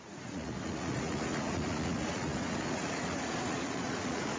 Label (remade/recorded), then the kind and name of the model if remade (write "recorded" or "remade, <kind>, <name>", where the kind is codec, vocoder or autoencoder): remade, vocoder, Vocos